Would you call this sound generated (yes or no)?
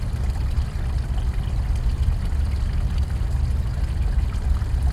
no